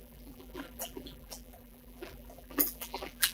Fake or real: fake